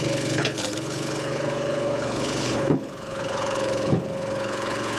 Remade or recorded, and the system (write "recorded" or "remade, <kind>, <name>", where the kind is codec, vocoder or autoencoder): remade, codec, HILCodec